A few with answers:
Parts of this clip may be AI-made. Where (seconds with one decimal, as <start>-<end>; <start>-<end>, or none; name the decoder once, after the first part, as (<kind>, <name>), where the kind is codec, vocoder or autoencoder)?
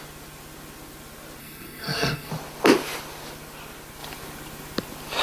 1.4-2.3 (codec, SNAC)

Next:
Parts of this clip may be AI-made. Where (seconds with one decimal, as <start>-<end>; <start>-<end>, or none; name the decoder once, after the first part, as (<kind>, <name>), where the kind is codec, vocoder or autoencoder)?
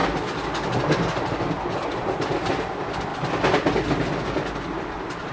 none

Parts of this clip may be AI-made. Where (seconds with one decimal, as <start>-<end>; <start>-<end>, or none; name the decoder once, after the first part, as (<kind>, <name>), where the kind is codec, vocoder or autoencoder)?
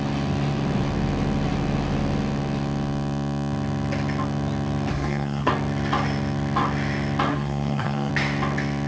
4.9-5.5 (codec, SNAC); 7.3-8.1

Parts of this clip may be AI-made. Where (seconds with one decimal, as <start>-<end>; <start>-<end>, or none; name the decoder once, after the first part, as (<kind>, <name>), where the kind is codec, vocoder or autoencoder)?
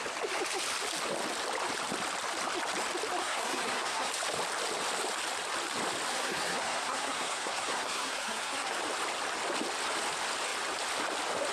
3.2-4.1 (codec, SNAC); 6.1-8.8